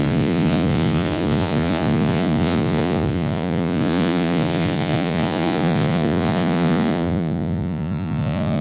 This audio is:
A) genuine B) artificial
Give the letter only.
B